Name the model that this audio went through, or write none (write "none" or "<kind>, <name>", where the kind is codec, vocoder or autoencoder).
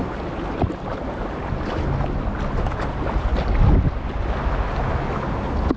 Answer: none